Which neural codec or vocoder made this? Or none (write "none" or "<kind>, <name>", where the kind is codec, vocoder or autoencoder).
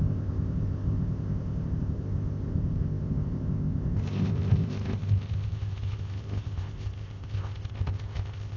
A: codec, ZipCodec